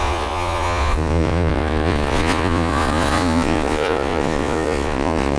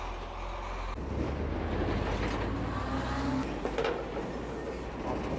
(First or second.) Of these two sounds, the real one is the second